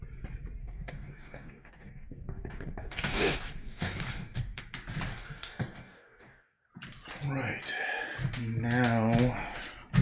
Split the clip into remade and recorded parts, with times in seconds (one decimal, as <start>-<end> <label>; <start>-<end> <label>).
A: 0.0-0.6 recorded; 0.6-4.6 remade; 4.6-5.1 recorded; 5.1-6.7 remade; 6.7-10.0 recorded